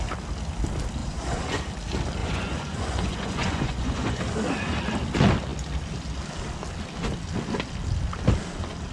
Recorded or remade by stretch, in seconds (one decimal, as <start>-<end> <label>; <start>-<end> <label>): 0.0-1.0 recorded; 1.0-1.6 remade; 1.6-2.2 recorded; 2.2-4.2 remade; 4.2-8.9 recorded